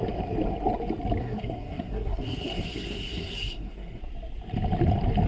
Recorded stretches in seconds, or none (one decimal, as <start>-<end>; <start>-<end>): 0.0-1.2; 4.0-5.3